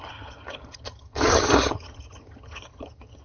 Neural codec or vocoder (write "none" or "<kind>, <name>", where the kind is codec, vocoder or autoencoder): vocoder, HiFi-GAN